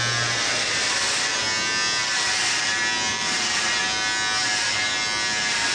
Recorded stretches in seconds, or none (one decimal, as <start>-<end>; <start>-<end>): 0.0-3.1; 3.7-5.7